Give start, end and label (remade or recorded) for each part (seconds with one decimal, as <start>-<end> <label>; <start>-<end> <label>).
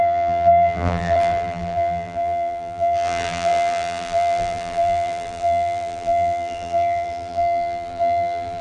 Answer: 0.0-8.6 remade